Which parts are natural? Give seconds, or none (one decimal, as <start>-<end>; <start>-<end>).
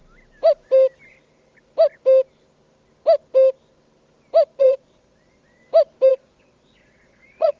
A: 0.0-4.6; 5.6-6.1